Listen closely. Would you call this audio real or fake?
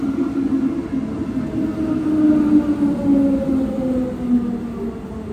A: real